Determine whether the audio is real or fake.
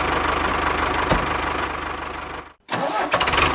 real